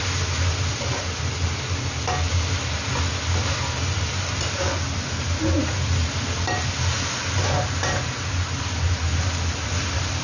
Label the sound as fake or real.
real